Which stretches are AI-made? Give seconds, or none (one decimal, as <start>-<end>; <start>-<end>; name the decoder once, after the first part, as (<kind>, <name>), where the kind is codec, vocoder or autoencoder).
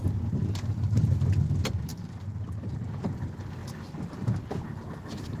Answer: none